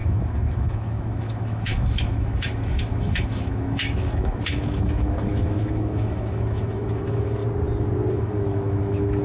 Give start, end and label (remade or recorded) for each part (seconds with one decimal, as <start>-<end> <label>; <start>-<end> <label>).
0.0-7.4 remade; 7.4-8.1 recorded; 8.1-9.2 remade